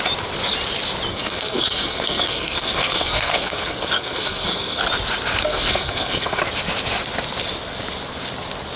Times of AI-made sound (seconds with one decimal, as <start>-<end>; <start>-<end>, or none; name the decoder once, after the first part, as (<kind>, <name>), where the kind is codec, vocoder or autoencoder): 1.1-4.8 (codec, SNAC); 5.4-6.4